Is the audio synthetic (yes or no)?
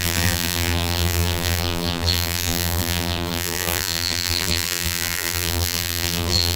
yes